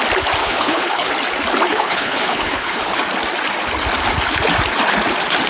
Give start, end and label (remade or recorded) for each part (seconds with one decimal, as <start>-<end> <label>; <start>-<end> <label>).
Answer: 0.0-0.4 recorded; 0.4-1.1 remade; 1.1-1.7 recorded; 1.7-3.0 remade; 3.0-5.5 recorded